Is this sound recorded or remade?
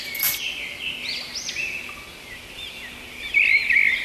recorded